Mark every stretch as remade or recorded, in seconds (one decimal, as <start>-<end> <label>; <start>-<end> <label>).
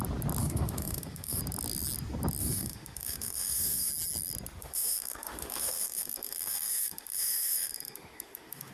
0.0-0.4 recorded; 0.4-1.4 remade; 1.4-2.4 recorded; 2.4-3.9 remade; 3.9-4.6 recorded; 4.6-8.7 remade